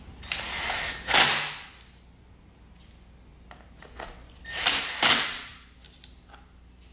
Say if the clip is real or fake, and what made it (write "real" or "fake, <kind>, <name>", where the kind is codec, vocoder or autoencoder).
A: real